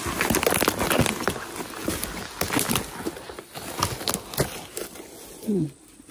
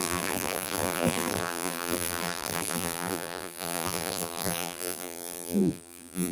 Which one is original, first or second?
first